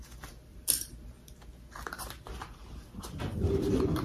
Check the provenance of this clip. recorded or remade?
recorded